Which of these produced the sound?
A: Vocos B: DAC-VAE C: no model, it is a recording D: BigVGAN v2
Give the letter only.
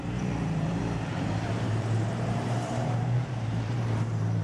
D